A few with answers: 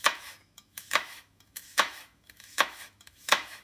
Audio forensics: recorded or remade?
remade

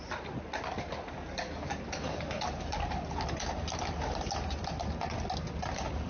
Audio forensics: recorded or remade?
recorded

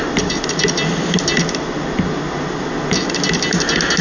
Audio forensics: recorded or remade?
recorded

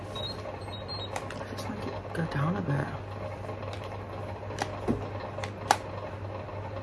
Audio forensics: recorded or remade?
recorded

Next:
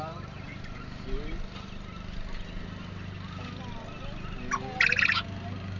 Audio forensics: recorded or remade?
recorded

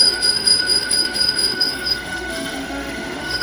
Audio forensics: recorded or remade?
remade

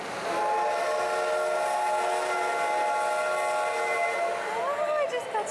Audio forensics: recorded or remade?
recorded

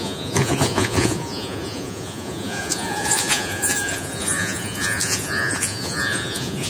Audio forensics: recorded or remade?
remade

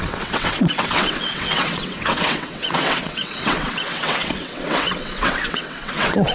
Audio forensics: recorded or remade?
remade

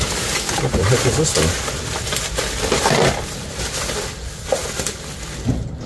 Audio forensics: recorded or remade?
recorded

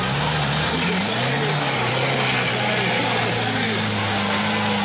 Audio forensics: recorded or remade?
recorded